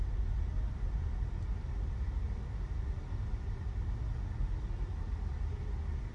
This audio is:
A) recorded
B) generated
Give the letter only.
A